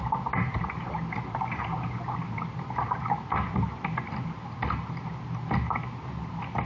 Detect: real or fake real